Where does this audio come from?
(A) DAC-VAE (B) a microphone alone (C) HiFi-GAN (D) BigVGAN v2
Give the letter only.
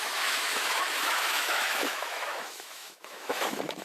A